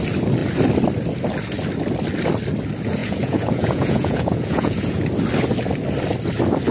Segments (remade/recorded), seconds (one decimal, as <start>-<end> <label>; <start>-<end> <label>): 0.0-3.0 recorded; 3.0-5.0 remade; 5.0-6.7 recorded